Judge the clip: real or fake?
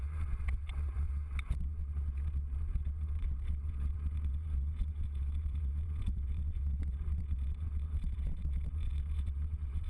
fake